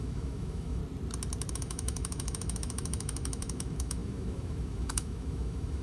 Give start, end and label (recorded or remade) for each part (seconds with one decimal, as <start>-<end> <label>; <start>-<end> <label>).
0.0-0.8 remade; 0.8-1.5 recorded; 1.5-5.8 remade